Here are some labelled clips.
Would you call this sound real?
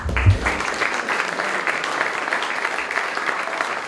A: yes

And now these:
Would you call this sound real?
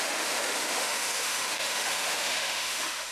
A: no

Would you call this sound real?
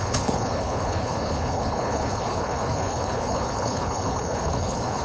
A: no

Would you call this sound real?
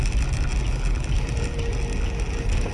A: yes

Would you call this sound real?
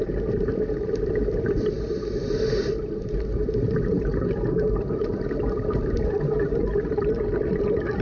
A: no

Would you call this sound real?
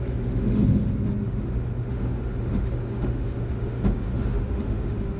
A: no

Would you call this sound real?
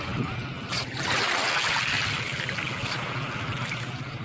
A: yes